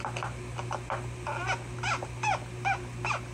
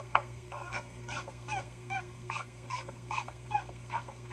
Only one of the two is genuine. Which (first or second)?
first